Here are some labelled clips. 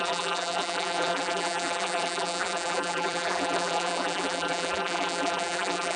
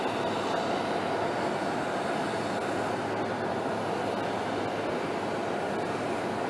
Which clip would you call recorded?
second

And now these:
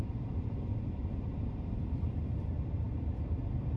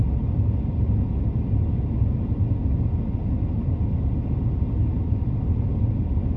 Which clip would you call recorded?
second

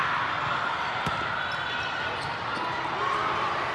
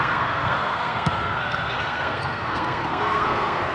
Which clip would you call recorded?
first